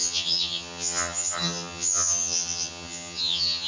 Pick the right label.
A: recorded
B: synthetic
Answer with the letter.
B